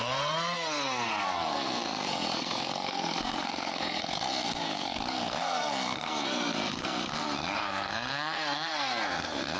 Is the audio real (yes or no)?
no